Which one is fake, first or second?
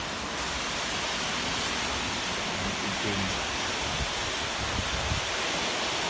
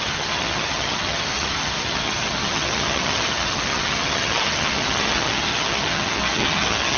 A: second